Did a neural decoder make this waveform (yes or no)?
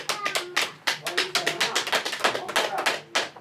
no